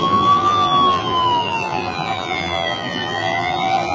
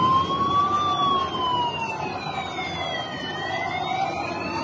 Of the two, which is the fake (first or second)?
first